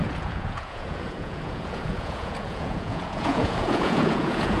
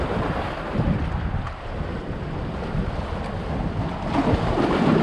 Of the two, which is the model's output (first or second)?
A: first